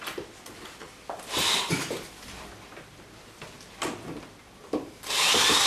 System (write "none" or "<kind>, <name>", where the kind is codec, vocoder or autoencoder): vocoder, BigVGAN v2